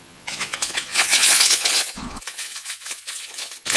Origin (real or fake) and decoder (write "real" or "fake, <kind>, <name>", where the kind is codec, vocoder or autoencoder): fake, vocoder, Vocos